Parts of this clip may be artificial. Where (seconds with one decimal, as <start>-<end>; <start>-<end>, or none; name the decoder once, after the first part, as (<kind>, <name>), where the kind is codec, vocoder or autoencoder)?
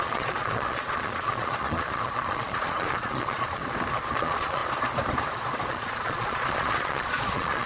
0.0-3.6 (vocoder, Vocos); 4.1-4.6; 5.7-7.7